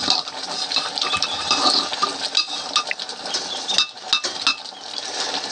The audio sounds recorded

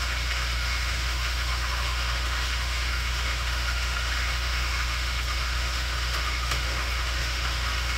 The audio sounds remade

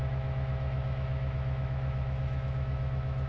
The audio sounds remade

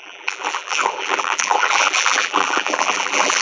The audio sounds remade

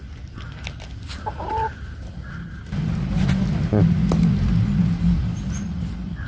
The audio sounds recorded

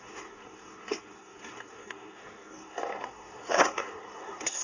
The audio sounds remade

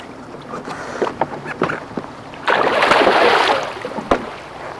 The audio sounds recorded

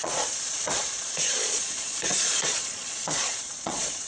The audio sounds remade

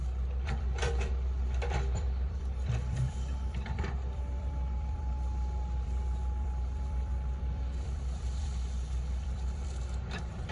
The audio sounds remade